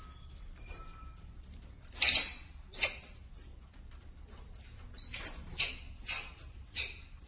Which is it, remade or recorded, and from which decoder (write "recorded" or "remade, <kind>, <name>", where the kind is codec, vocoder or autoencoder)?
remade, vocoder, BigVGAN v2